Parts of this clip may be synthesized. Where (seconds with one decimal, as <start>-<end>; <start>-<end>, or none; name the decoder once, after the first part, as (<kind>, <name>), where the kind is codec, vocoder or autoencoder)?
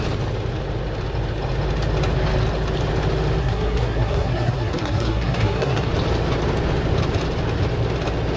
3.4-5.9 (codec, SNAC)